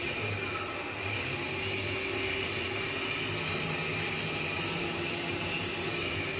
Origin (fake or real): real